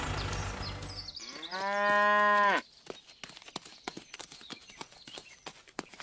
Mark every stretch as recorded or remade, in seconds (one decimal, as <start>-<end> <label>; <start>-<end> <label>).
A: 0.0-3.7 recorded; 3.7-6.0 remade